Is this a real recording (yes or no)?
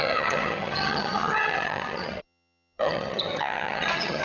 no